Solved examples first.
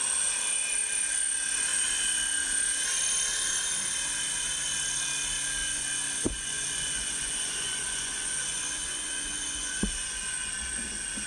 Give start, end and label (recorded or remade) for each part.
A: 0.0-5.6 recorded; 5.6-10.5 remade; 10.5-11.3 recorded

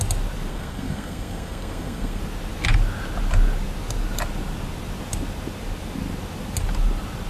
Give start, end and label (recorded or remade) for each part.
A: 0.0-0.5 recorded; 0.5-2.2 remade; 2.2-7.3 recorded

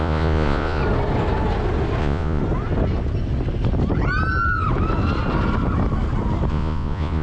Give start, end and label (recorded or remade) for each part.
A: 0.0-0.8 remade; 0.8-2.0 recorded; 2.0-2.4 remade; 2.4-6.5 recorded; 6.5-7.2 remade

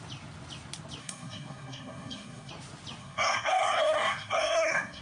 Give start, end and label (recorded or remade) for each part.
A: 0.0-1.0 recorded; 1.0-2.5 remade; 2.5-3.0 recorded; 3.0-5.0 remade

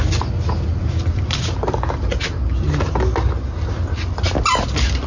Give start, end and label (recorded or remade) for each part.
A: 0.0-0.8 recorded; 0.8-1.4 remade; 1.4-5.1 recorded

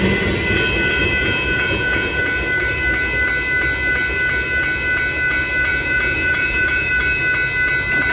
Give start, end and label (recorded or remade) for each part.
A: 0.0-1.0 recorded; 1.0-2.2 remade; 2.2-5.7 recorded; 5.7-6.9 remade; 6.9-8.1 recorded

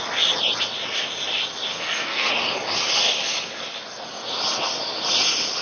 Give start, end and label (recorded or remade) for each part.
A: 0.0-1.7 recorded; 1.7-2.3 remade; 2.3-5.6 recorded